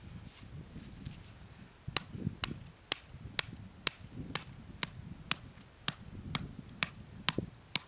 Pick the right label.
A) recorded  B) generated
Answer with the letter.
A